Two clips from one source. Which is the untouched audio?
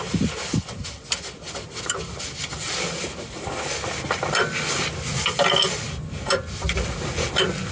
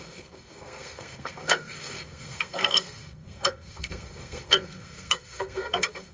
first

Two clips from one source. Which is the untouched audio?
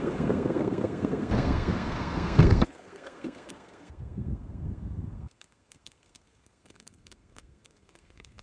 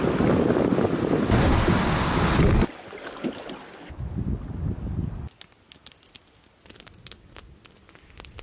second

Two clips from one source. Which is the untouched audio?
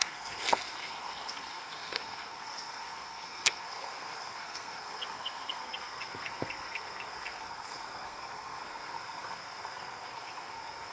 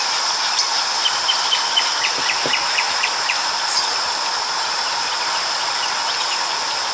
second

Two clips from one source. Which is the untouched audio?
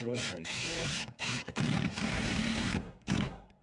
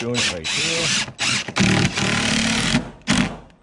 second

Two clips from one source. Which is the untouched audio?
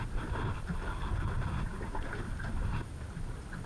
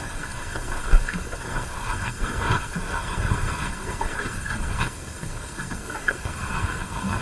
first